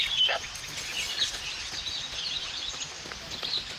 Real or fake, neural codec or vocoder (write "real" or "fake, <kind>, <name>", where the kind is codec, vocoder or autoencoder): real